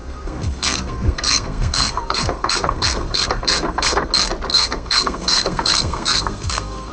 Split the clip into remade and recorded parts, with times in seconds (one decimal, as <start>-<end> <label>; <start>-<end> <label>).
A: 0.0-4.1 remade; 4.1-4.5 recorded; 4.5-6.9 remade